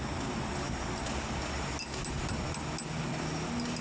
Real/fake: real